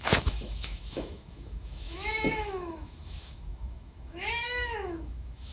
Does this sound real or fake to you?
fake